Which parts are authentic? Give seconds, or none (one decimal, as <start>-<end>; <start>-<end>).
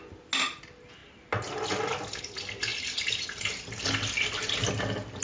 0.0-5.2